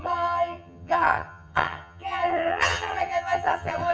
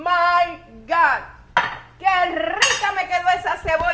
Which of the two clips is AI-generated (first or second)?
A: first